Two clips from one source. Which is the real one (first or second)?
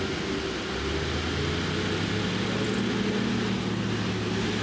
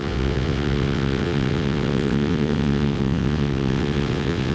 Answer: first